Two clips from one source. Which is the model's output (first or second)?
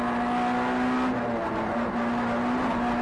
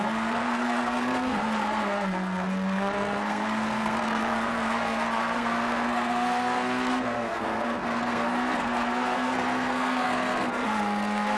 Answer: second